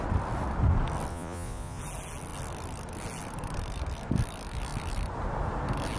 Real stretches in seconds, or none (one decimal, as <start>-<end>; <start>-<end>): 0.0-1.1; 1.8-6.0